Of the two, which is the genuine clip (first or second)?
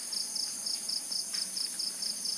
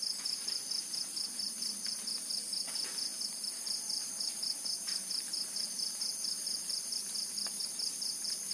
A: first